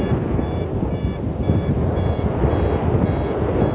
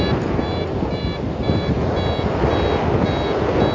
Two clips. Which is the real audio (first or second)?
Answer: second